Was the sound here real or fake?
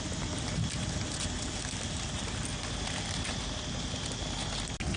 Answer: real